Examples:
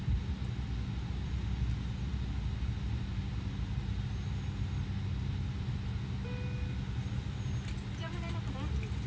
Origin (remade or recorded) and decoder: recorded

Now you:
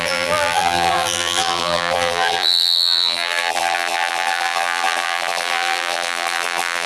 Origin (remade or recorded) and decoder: remade, vocoder, BigVGAN v2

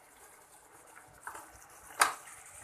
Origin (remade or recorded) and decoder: recorded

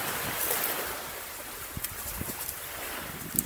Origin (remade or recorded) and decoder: remade, vocoder, BigVGAN v2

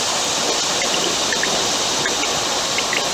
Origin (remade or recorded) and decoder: recorded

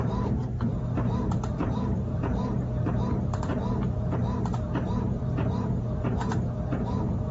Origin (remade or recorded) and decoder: remade, vocoder, BigVGAN v2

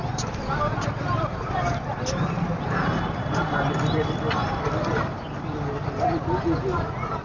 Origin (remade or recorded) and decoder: remade, vocoder, BigVGAN v2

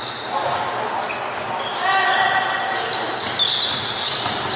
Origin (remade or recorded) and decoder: recorded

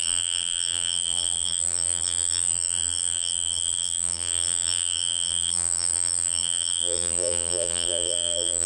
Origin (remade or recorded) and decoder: remade, vocoder, BigVGAN v2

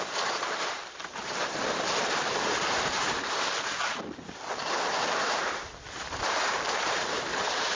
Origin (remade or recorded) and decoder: remade, vocoder, BigVGAN v2